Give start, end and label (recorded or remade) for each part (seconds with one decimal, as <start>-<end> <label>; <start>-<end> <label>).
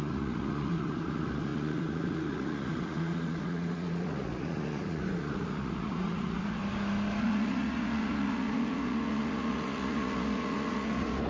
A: 0.0-6.6 remade; 6.6-7.2 recorded; 7.2-11.3 remade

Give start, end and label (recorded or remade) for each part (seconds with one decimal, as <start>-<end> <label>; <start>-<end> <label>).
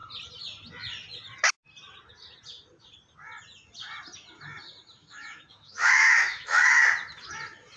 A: 0.0-5.0 recorded; 5.0-6.8 remade; 6.8-7.8 recorded